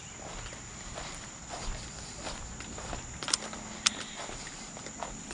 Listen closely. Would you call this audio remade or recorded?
recorded